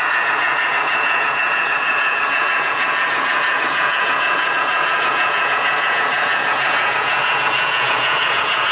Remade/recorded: remade